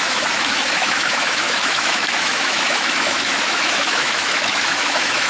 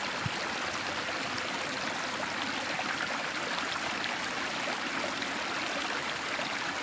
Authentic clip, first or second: second